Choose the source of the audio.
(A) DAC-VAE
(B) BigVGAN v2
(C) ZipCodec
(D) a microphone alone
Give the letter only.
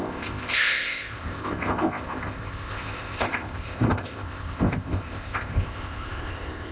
C